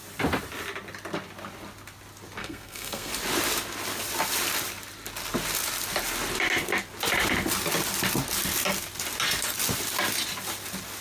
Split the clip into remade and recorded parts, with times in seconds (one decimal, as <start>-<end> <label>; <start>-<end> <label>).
0.0-2.4 recorded; 2.4-3.1 remade; 3.1-11.0 recorded